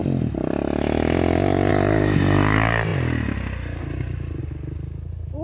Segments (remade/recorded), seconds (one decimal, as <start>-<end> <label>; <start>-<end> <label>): 0.0-5.4 recorded